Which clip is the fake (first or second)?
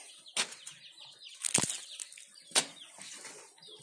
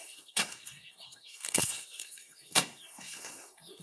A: second